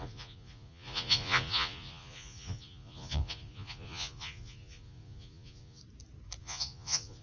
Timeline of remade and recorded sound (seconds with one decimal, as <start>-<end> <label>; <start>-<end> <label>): 0.0-5.8 remade; 5.8-6.4 recorded; 6.4-7.2 remade